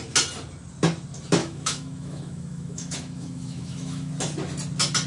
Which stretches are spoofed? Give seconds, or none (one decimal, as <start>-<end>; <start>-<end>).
1.4-4.1